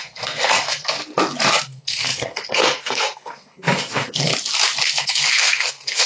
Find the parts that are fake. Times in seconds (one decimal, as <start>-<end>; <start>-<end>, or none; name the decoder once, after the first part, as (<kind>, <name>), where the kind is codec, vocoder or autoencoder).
0.0-1.0 (codec, SNAC); 1.5-4.3; 4.9-6.1